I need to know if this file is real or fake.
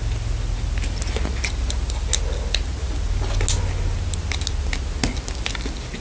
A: real